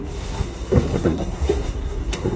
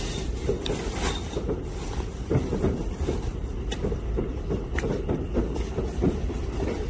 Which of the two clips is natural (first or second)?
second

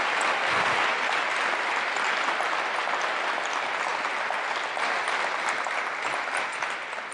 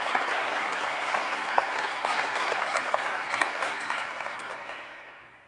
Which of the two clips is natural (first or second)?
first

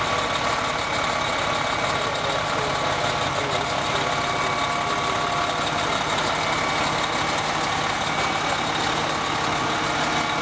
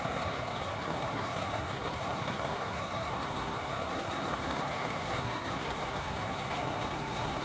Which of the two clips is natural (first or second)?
first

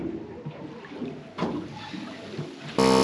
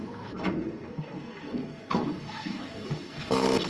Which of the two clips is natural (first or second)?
first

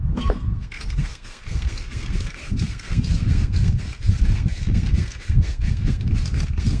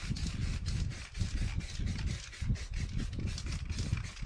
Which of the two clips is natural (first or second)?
second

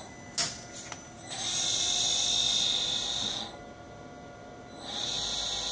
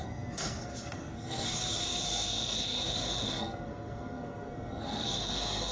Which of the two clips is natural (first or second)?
first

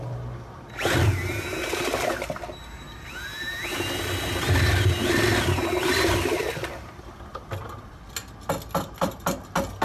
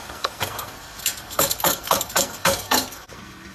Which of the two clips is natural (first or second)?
first